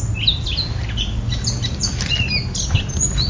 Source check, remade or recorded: recorded